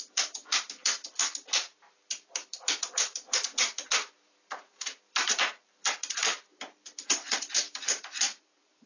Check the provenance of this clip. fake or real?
fake